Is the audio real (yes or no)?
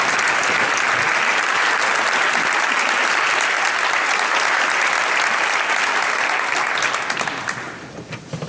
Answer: yes